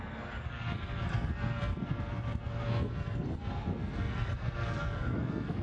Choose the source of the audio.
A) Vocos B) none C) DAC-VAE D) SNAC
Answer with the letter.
D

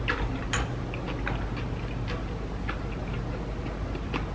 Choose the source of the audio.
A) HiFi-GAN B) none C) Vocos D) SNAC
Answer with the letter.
B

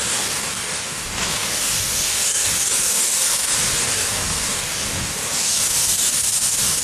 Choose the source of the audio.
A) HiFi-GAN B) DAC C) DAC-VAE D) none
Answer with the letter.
B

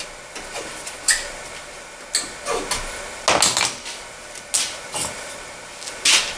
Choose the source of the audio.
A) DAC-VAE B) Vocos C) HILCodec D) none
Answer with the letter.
D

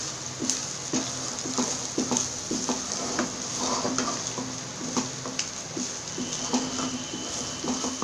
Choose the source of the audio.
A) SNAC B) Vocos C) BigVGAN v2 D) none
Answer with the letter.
D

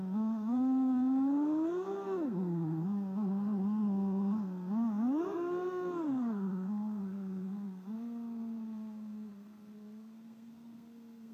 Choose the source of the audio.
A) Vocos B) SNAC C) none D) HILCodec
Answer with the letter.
B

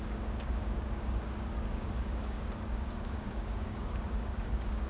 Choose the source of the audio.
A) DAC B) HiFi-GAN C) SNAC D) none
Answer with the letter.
A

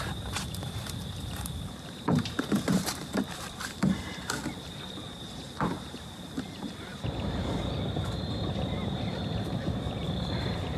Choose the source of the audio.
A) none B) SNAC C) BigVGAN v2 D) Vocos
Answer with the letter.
C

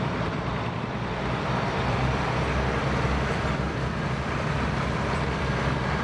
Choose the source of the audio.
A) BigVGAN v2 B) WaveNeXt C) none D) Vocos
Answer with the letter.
A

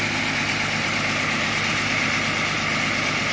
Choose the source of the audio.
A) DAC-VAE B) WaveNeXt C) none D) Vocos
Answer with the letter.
C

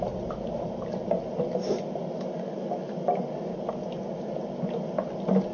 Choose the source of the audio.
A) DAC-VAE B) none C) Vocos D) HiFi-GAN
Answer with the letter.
B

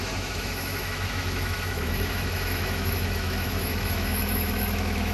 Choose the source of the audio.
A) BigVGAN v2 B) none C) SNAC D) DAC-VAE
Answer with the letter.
D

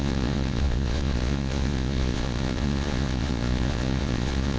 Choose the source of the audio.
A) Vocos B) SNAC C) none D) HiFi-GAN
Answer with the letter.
A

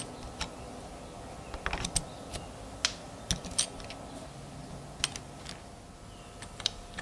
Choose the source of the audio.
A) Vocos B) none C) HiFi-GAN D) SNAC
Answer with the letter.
B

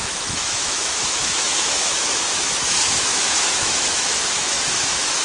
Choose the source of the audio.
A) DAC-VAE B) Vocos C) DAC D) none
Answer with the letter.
A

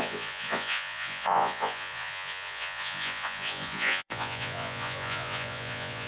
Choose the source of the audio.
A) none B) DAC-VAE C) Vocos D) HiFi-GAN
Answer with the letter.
C